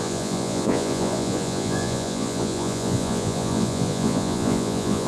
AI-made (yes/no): yes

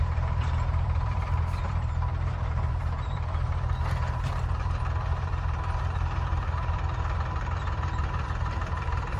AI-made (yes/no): yes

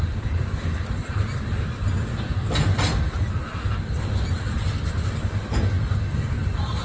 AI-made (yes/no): no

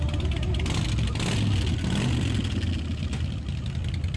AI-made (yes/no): no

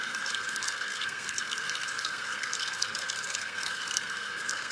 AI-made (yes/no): yes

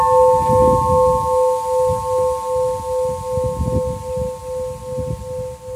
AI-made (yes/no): no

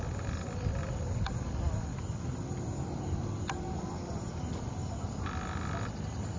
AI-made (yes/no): no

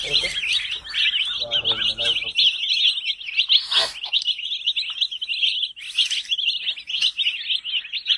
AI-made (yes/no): no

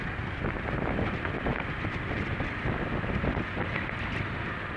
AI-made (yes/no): no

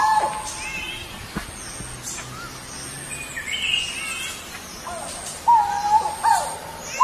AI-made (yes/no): no